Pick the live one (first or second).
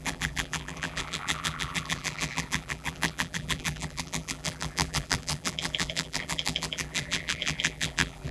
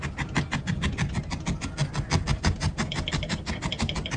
second